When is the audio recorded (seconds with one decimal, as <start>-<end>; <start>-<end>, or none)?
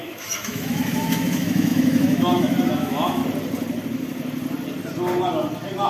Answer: 3.2-5.9